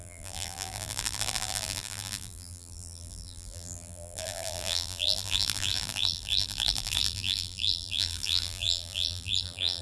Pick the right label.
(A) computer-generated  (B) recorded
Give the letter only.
A